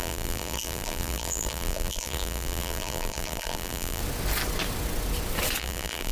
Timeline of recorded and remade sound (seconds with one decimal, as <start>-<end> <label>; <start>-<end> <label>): 0.0-4.0 remade; 4.0-5.6 recorded; 5.6-6.1 remade